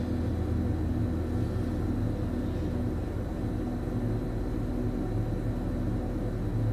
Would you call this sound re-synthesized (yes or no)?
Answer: no